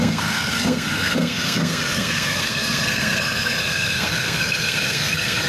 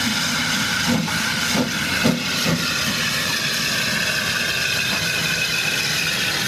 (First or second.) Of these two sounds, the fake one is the first